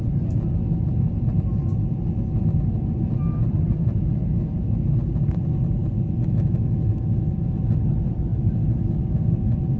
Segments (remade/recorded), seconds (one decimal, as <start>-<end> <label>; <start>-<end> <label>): 0.0-9.8 recorded